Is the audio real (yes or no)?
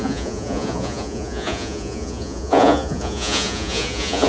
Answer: no